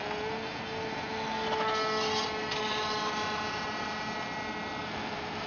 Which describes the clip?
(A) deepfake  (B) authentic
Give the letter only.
B